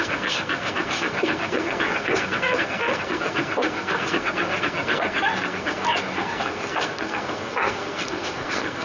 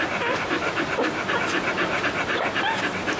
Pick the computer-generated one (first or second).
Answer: first